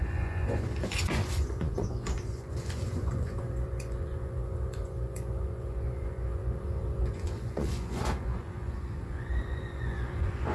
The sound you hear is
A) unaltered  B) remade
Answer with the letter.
B